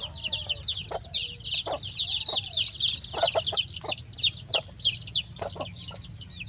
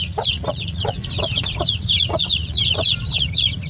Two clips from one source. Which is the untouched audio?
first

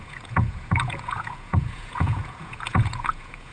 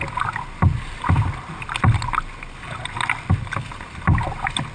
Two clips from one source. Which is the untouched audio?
second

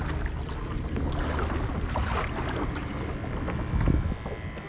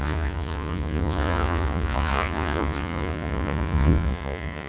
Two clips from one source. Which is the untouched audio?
first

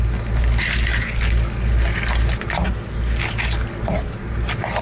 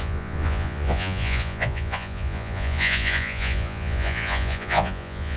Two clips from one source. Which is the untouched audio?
first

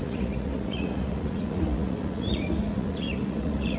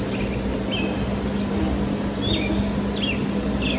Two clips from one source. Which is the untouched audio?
second